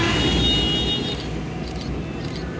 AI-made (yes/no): no